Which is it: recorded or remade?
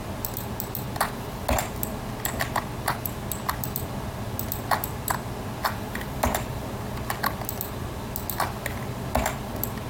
recorded